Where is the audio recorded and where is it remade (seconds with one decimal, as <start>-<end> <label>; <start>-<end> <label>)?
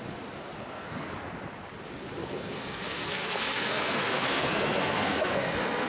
0.0-0.6 recorded; 0.6-1.1 remade; 1.1-2.2 recorded; 2.2-5.9 remade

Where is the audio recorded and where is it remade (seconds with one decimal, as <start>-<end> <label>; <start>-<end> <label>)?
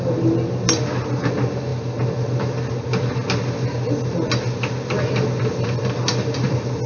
0.0-6.9 recorded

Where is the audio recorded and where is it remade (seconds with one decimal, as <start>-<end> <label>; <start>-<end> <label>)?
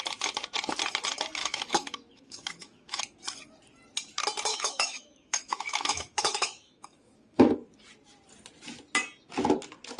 0.0-1.4 recorded; 1.4-3.0 remade; 3.0-4.5 recorded; 4.5-7.5 remade; 7.5-10.0 recorded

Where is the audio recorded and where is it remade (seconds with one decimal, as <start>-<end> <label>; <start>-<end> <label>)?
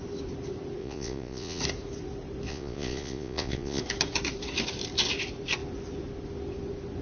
0.0-0.8 recorded; 0.8-1.6 remade; 1.6-2.5 recorded; 2.5-3.8 remade; 3.8-7.0 recorded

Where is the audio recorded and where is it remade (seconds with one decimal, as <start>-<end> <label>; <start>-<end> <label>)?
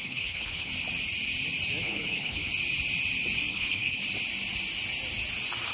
0.0-0.7 remade; 0.7-1.8 recorded; 1.8-2.5 remade; 2.5-3.5 recorded; 3.5-4.0 remade; 4.0-5.7 recorded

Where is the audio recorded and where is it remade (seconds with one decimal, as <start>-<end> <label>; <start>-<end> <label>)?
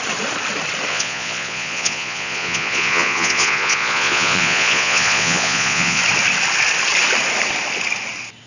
0.0-0.9 recorded; 0.9-6.0 remade; 6.0-8.5 recorded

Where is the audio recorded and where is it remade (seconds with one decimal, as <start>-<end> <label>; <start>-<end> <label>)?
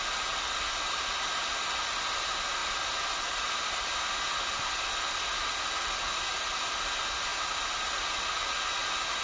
0.0-9.2 recorded